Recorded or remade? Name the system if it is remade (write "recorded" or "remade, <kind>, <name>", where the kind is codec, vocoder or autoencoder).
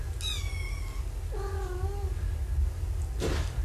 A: recorded